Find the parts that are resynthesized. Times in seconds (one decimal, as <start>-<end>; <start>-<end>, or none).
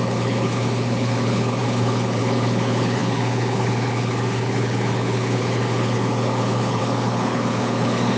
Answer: 0.0-8.2